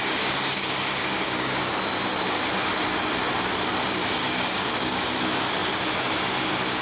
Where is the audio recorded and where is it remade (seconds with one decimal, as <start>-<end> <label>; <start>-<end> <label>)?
0.0-1.7 remade; 1.7-4.2 recorded; 4.2-5.1 remade; 5.1-6.8 recorded

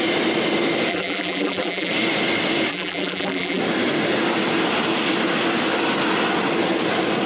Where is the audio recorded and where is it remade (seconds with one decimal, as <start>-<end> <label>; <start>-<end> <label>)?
0.0-0.9 recorded; 0.9-1.9 remade; 1.9-2.7 recorded; 2.7-3.6 remade; 3.6-7.3 recorded